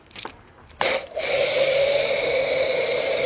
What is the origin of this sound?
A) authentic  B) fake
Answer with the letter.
A